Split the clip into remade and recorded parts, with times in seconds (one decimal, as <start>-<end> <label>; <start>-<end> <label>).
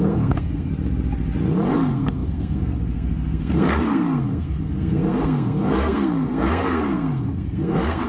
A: 0.0-0.7 remade; 0.7-1.7 recorded; 1.7-8.1 remade